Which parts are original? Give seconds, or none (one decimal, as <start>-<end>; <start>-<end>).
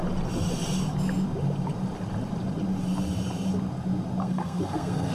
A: 0.0-4.2